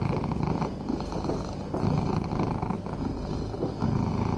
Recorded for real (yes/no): yes